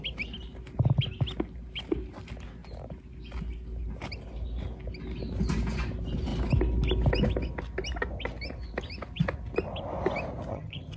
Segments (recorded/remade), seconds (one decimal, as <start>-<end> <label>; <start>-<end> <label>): 0.0-10.5 recorded; 10.5-11.0 remade